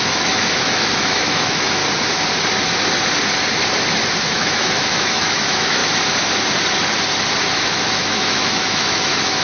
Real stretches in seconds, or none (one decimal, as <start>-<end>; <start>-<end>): 1.8-4.3; 5.8-7.4